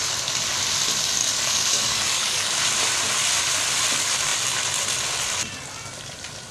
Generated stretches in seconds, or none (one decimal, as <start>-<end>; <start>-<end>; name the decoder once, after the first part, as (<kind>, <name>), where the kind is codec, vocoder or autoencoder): 1.2-2.6 (codec, DAC)